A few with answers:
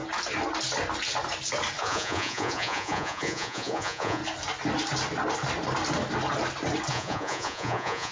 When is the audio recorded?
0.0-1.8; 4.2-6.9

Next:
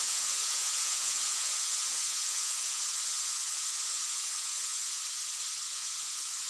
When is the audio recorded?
5.0-5.7

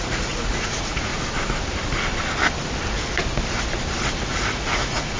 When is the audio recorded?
1.1-4.2

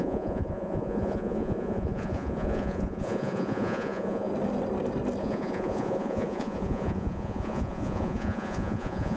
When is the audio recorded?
4.3-5.2

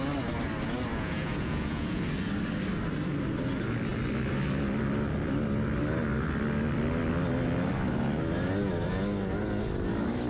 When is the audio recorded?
0.0-0.9; 2.0-10.3

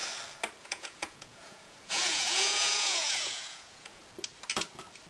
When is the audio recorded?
0.0-0.6; 4.0-5.1